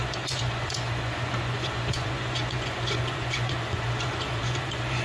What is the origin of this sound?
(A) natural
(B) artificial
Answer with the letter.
B